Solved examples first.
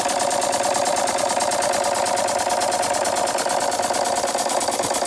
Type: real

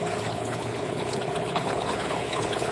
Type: fake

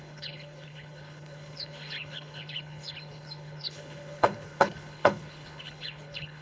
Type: fake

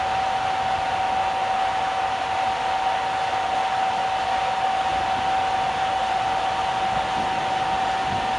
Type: real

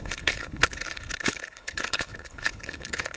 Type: fake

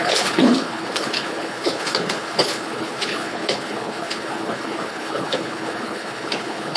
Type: fake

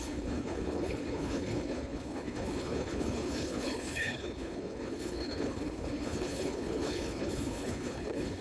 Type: fake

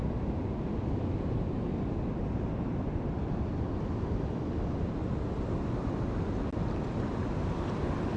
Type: real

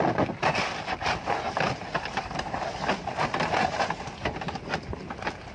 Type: real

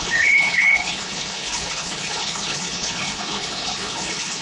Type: fake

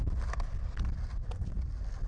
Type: real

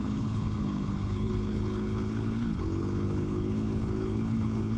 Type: fake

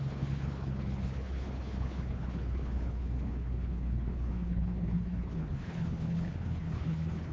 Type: fake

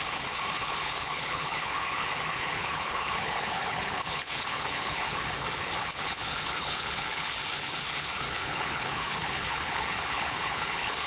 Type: fake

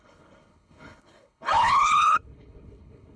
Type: fake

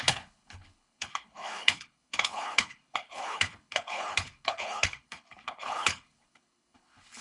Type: fake